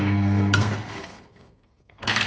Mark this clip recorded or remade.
remade